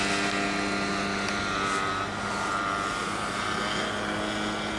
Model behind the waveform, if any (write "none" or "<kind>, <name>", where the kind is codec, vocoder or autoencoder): none